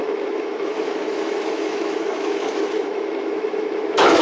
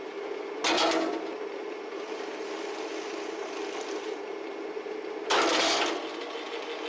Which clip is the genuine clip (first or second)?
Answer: second